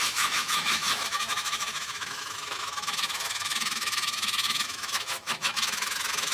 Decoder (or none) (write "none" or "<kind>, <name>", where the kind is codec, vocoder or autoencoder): autoencoder, DAC-VAE